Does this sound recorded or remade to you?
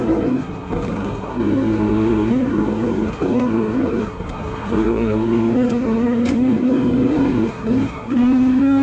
remade